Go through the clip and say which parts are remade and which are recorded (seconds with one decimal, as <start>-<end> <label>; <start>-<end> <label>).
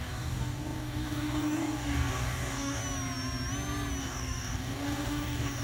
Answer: 0.0-2.8 remade; 2.8-4.0 recorded; 4.0-5.6 remade